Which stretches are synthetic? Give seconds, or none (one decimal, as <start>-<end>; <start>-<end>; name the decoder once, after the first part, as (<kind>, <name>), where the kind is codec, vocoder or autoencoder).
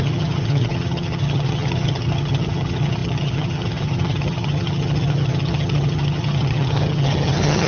0.0-7.7 (vocoder, HiFi-GAN)